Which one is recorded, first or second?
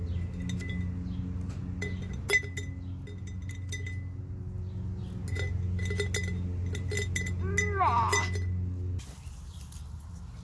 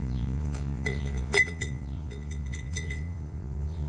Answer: first